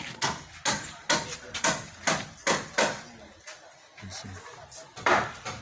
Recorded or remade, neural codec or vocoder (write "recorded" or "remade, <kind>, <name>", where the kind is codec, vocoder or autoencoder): recorded